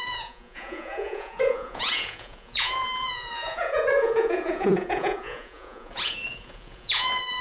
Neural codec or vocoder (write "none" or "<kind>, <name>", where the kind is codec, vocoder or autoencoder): vocoder, Vocos